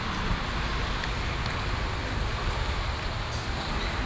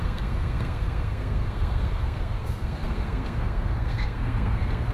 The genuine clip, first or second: first